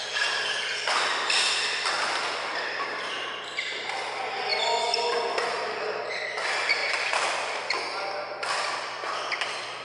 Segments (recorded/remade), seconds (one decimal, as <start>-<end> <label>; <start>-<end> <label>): 0.0-2.5 recorded; 2.5-3.7 remade; 3.7-9.8 recorded